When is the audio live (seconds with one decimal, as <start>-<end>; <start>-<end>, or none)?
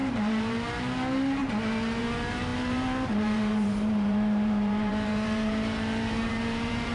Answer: 1.4-2.0